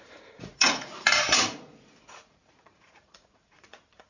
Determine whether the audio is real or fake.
fake